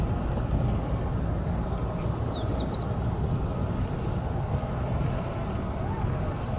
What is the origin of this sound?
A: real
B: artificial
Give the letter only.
A